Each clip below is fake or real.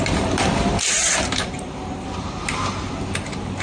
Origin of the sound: fake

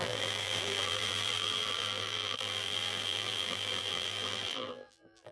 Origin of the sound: fake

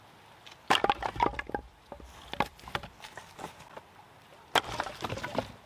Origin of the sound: real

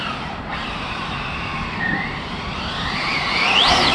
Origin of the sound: fake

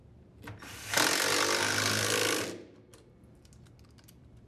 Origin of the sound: real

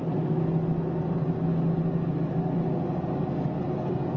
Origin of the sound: real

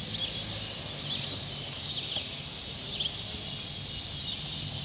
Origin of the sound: real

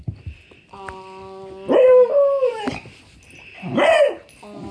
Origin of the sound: real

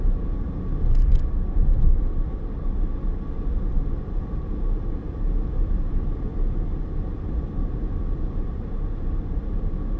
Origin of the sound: real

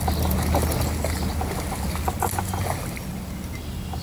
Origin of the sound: real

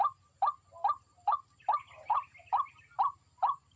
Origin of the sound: real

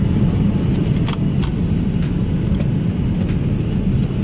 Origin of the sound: real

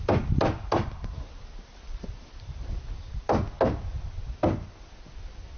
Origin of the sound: real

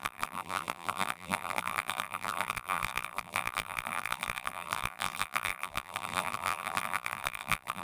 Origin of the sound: fake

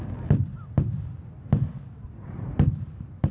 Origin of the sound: fake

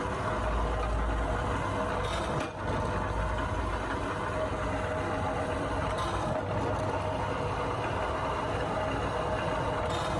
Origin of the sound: real